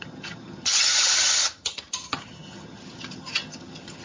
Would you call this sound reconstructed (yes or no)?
yes